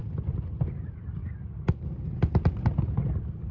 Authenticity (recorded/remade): recorded